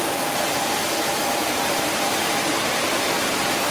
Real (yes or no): no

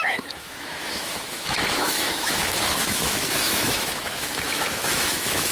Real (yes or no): no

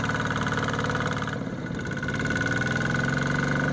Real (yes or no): yes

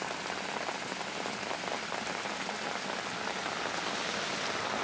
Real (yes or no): yes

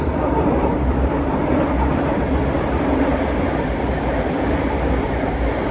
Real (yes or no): no